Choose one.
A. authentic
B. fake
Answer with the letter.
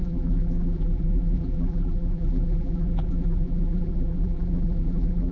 B